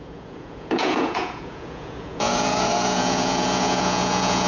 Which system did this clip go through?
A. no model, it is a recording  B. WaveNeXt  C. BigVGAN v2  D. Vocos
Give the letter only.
D